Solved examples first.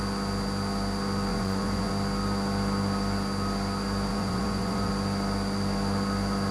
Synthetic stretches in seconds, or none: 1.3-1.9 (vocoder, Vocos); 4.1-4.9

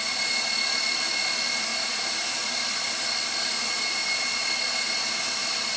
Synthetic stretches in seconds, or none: none